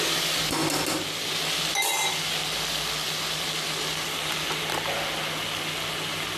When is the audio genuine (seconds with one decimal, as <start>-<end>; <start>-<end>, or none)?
0.0-6.4